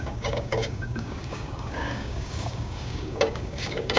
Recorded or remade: remade